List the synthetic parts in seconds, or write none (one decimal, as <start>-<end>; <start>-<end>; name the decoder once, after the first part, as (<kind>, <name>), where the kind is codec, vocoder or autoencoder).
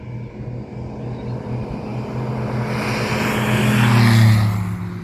none